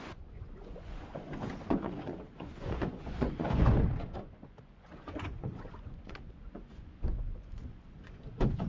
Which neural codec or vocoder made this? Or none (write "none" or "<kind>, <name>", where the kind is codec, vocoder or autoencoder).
vocoder, Vocos